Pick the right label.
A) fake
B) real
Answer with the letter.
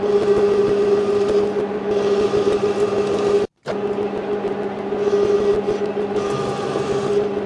B